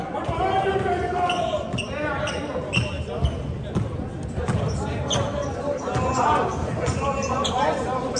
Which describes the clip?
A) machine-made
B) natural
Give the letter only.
B